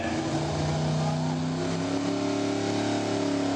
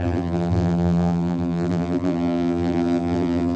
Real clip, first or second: first